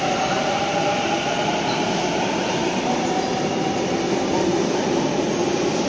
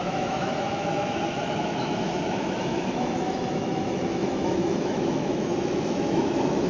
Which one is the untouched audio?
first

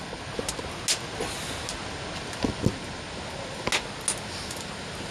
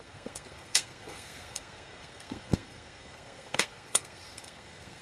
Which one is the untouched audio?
first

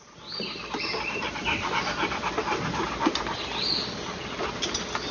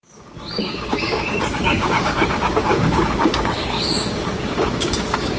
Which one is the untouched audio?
first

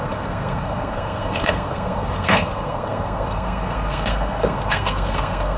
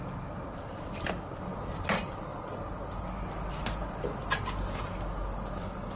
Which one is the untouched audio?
second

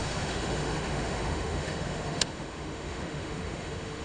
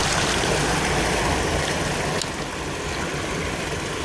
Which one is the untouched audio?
second